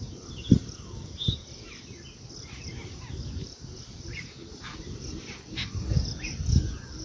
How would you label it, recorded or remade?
remade